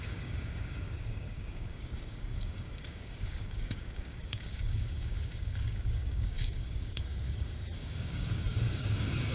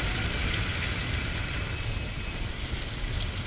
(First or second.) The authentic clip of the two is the second